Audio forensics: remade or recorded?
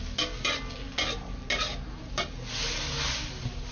recorded